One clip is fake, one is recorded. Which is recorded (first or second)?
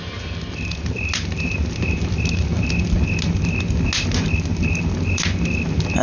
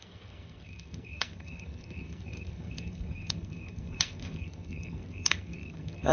first